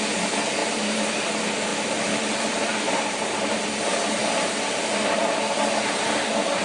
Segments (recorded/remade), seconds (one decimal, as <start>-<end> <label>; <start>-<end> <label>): 0.0-0.6 recorded; 0.6-1.1 remade; 1.1-1.7 recorded; 1.7-3.6 remade; 3.6-4.2 recorded; 4.2-5.2 remade; 5.2-6.6 recorded